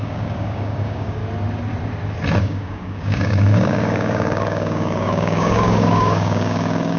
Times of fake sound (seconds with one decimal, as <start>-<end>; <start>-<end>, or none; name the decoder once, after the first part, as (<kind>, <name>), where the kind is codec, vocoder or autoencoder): 0.0-1.2 (codec, DAC); 2.4-7.0